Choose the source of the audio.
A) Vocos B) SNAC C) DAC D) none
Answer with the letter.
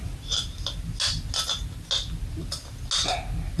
D